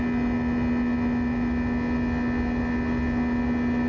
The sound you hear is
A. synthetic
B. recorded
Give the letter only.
B